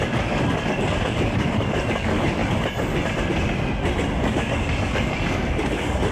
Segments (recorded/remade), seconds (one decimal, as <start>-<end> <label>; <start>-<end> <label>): 0.0-2.4 remade; 2.4-4.2 recorded; 4.2-6.1 remade